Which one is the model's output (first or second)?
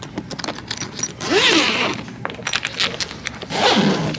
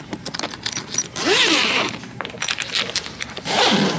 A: second